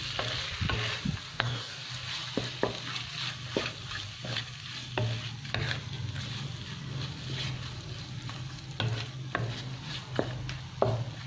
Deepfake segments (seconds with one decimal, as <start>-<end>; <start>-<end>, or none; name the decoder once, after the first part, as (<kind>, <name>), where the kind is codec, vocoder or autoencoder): 1.3-1.9 (codec, DAC)

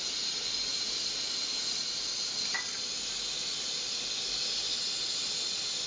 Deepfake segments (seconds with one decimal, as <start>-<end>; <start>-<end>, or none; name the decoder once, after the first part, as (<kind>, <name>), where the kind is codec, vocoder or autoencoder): none

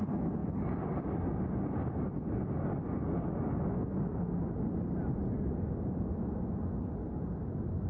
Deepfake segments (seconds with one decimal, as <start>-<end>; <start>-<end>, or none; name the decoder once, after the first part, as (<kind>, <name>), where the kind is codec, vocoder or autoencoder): none

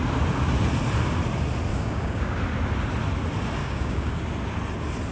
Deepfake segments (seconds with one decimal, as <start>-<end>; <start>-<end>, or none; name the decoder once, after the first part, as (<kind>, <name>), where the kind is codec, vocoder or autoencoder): 1.7-2.4 (codec, DAC); 3.6-4.2

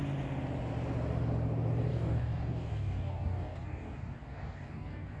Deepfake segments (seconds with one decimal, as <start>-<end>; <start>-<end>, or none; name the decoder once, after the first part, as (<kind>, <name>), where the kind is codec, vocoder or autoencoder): 1.9-5.2 (codec, DAC)

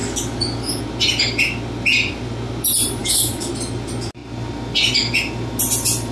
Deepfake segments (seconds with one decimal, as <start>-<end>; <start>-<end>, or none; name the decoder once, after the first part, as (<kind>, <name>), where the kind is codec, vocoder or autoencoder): 0.0-0.8 (codec, DAC); 3.0-3.5

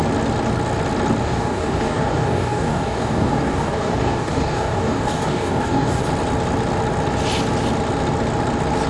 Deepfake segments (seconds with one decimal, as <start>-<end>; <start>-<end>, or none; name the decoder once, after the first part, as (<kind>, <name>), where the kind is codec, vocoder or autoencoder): 1.2-6.0 (codec, DAC)

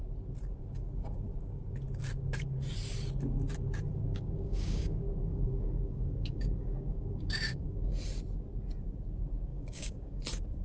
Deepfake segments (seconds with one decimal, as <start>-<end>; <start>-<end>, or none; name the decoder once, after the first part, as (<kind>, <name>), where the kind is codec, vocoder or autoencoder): 4.1-7.9 (codec, DAC); 9.5-10.2